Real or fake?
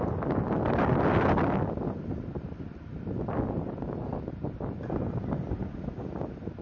real